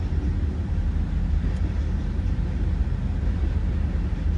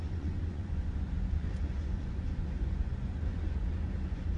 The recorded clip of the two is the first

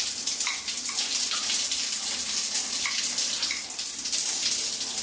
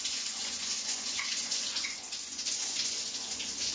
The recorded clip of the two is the first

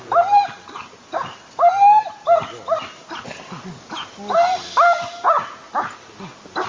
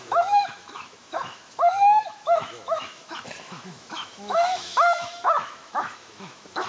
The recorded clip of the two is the first